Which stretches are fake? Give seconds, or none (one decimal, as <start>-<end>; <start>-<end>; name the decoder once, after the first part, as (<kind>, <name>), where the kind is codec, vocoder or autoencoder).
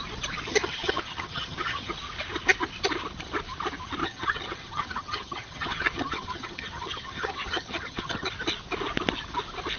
0.5-1.9 (vocoder, HiFi-GAN); 4.0-8.3